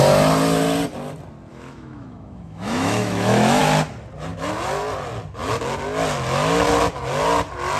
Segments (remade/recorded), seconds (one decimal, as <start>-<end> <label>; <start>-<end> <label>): 0.0-1.5 recorded; 1.5-3.6 remade; 3.6-7.8 recorded